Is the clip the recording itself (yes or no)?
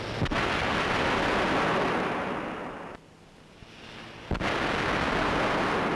yes